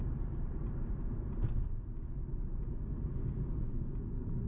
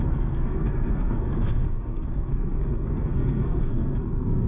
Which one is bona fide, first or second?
first